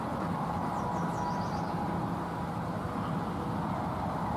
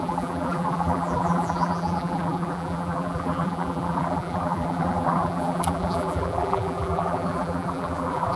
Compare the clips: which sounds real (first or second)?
first